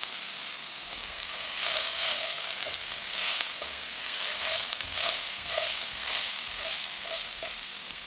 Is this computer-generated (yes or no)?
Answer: yes